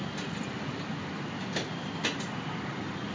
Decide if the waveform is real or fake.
real